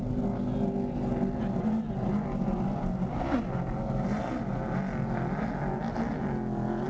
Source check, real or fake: real